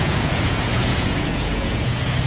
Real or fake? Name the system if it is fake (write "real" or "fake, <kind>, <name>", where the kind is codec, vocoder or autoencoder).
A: fake, vocoder, Vocos